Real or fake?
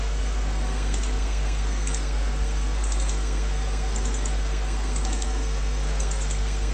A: fake